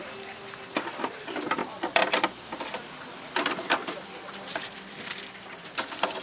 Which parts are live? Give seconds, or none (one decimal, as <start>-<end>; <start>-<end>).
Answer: 0.0-1.6; 5.3-6.2